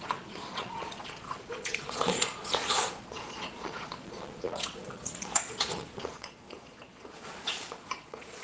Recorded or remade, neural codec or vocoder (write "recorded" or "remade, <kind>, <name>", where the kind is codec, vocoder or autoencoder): remade, vocoder, Vocos